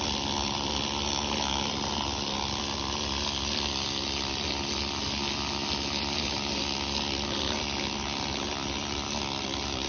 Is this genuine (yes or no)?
yes